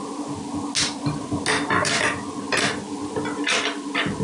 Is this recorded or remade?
recorded